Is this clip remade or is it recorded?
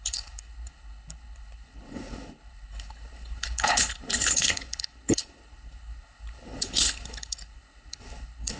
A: remade